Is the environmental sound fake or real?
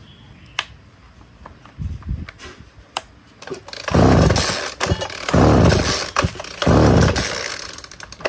real